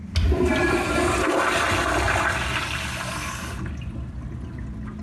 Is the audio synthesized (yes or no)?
no